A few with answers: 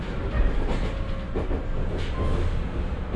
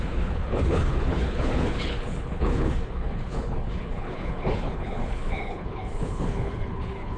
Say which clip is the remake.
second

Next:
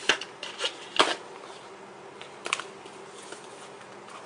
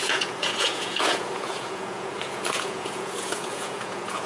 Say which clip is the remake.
second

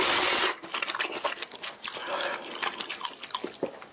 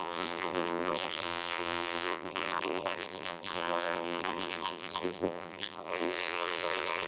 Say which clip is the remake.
second